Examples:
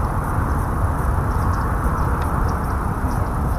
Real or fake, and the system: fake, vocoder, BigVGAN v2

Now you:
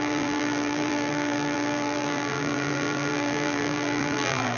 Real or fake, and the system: fake, vocoder, BigVGAN v2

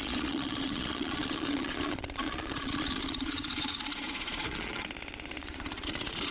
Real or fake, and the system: fake, vocoder, Vocos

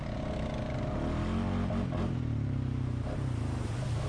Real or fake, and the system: real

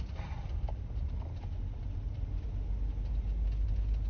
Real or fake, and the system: real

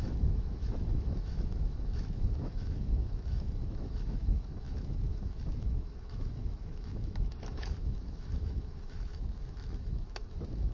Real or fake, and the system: fake, autoencoder, DAC-VAE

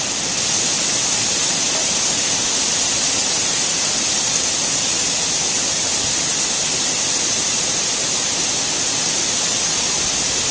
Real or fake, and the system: real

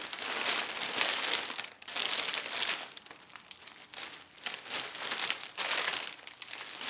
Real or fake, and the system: real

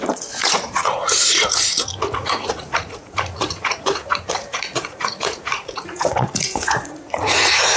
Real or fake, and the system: fake, vocoder, Vocos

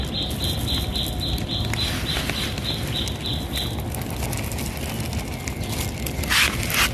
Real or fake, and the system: real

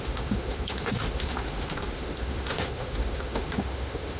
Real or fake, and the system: fake, autoencoder, DAC-VAE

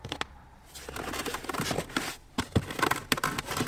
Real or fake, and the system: real